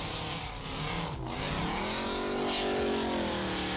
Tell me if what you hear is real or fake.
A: real